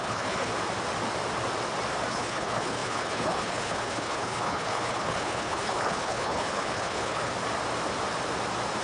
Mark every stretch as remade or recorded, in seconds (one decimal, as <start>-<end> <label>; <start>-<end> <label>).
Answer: 0.0-0.5 remade; 0.5-2.1 recorded; 2.1-7.3 remade; 7.3-8.8 recorded